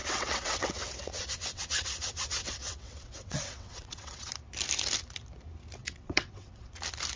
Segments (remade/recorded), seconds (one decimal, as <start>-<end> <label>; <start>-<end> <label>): 0.0-4.3 remade; 4.3-5.8 recorded; 5.8-6.7 remade; 6.7-7.2 recorded